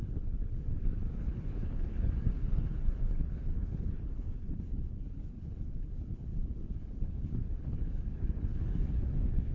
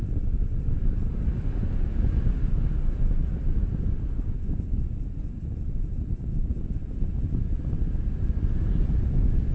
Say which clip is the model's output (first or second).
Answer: first